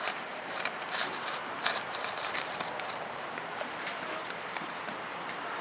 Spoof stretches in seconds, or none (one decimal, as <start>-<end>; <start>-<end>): 0.0-5.6